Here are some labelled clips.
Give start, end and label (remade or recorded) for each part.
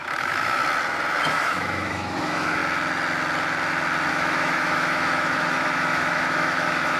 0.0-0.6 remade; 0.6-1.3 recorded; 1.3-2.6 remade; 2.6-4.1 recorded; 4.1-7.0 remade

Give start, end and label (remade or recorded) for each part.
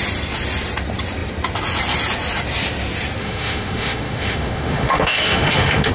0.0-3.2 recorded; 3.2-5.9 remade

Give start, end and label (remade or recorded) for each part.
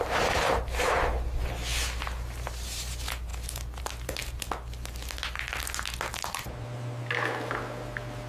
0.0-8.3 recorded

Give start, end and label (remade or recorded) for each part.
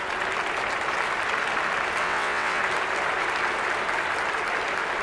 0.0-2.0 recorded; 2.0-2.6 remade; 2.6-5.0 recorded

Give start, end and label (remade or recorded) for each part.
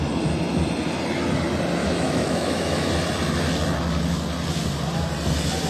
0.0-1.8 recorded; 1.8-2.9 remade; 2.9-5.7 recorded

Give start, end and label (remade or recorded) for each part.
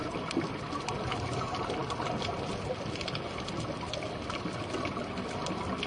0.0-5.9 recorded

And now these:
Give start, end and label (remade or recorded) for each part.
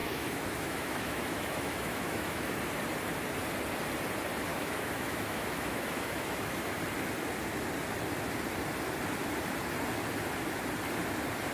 0.0-2.6 remade; 2.6-4.5 recorded; 4.5-6.7 remade; 6.7-11.5 recorded